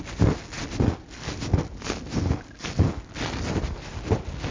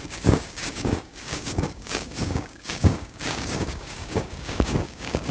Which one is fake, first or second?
second